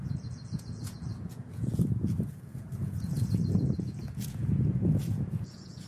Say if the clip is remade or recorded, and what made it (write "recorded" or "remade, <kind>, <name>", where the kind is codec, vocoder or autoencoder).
remade, vocoder, Vocos